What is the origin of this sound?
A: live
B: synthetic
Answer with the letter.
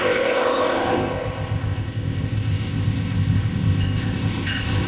B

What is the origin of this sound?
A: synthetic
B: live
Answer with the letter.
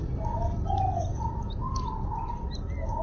B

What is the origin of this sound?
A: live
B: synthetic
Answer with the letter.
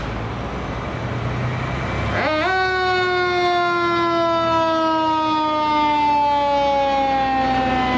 A